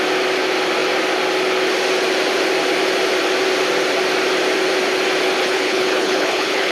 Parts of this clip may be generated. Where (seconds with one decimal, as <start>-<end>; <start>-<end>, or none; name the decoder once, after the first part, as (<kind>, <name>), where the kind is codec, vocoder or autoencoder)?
5.4-6.7 (codec, HILCodec)